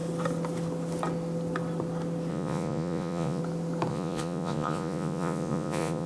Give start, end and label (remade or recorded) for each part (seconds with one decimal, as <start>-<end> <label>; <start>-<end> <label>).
0.0-2.3 recorded; 2.3-3.4 remade; 3.4-3.9 recorded; 3.9-6.1 remade